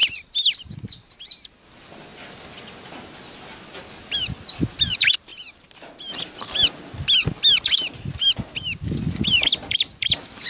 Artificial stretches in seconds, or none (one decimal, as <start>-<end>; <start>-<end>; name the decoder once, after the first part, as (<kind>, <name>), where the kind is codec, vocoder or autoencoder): none